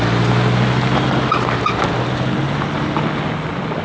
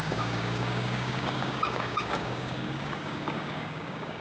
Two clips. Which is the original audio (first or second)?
first